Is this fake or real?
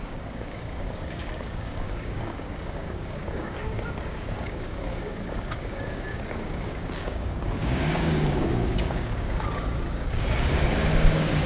fake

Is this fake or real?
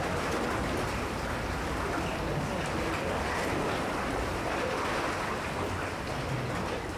real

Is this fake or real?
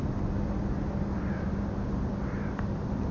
real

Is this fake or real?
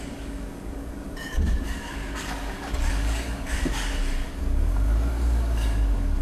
fake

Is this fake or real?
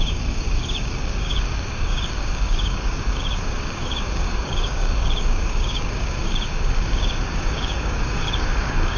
fake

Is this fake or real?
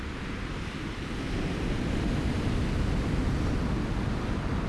real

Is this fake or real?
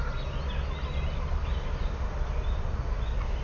real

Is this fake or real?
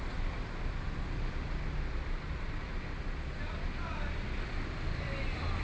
real